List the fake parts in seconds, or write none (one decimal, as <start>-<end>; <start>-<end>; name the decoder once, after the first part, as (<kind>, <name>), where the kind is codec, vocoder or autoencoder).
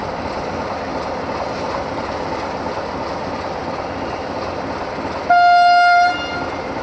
none